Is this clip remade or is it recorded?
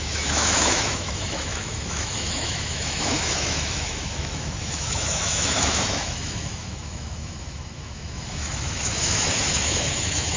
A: remade